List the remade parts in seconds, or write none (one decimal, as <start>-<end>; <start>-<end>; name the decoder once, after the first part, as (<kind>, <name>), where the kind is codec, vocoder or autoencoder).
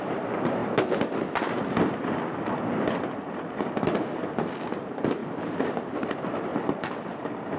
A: 0.0-0.6 (vocoder, BigVGAN v2); 4.8-5.2; 5.8-6.5